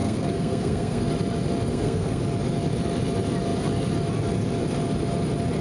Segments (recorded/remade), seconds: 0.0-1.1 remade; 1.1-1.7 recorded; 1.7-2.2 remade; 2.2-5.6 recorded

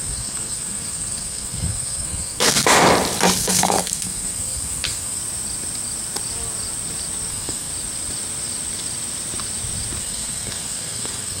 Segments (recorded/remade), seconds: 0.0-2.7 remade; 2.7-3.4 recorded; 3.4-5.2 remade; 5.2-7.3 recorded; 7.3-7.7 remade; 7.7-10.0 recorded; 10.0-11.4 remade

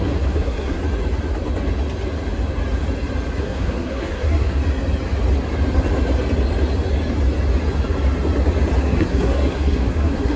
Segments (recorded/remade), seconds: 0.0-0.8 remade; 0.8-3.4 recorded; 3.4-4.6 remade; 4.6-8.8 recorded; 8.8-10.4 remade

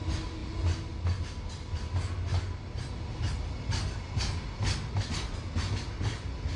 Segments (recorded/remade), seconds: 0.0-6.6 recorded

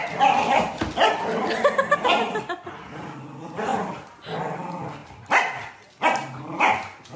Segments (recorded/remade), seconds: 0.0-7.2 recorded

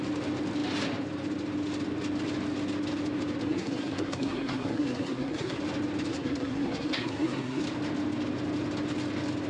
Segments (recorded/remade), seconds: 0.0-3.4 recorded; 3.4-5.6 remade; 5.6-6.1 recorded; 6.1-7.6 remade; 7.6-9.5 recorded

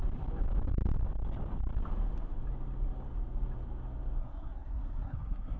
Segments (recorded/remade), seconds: 0.0-4.2 recorded; 4.2-5.6 remade

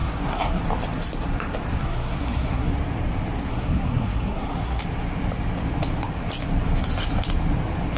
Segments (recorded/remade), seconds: 0.0-0.6 remade; 0.6-1.8 recorded; 1.8-2.7 remade; 2.7-3.5 recorded; 3.5-4.8 remade; 4.8-8.0 recorded